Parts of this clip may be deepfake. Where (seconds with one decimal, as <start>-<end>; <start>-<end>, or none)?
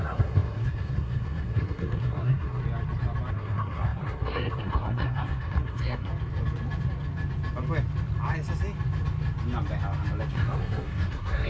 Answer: 0.0-2.6; 3.3-6.1; 10.3-11.5